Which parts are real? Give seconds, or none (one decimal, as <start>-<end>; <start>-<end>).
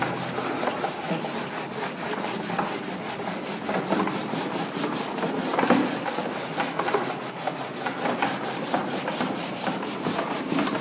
0.0-10.8